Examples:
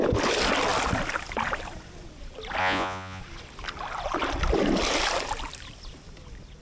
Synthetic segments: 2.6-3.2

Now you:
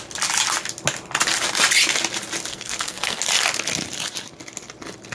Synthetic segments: 2.5-3.2

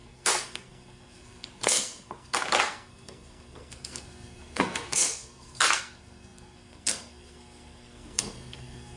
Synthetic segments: 0.0-9.0

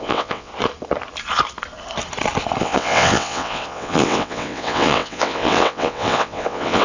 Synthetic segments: 0.0-0.5; 2.6-6.8

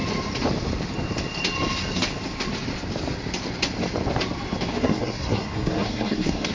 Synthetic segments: 4.7-6.5

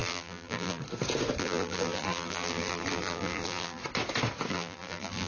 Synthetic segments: 0.0-0.8; 1.4-3.8; 4.5-5.3